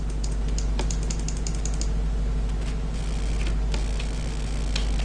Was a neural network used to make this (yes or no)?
no